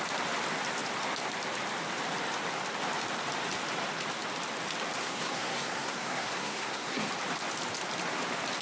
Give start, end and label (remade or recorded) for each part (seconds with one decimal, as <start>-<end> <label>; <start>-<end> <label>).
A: 0.0-5.0 recorded; 5.0-7.1 remade; 7.1-8.6 recorded